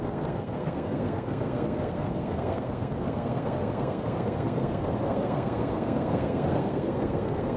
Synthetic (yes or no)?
yes